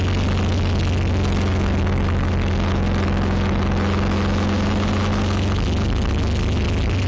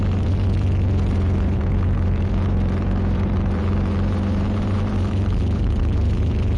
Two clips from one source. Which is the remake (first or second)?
second